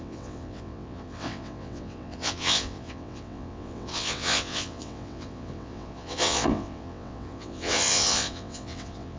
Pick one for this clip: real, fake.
fake